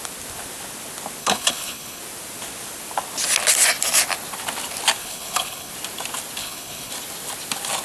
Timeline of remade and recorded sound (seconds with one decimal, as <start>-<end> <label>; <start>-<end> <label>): 0.0-1.2 recorded; 1.2-2.0 remade; 2.0-5.0 recorded; 5.0-5.7 remade; 5.7-6.4 recorded; 6.4-6.9 remade; 6.9-7.8 recorded